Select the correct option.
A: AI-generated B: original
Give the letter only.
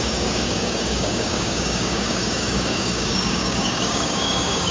A